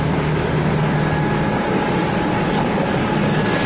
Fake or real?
real